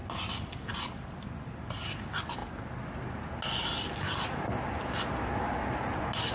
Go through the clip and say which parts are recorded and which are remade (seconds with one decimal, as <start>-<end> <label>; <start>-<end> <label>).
0.0-6.3 recorded